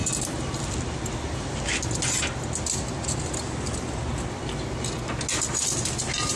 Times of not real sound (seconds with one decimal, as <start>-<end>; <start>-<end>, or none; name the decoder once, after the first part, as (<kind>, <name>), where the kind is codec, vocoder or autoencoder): none